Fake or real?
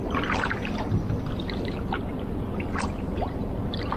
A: real